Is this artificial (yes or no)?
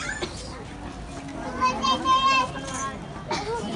no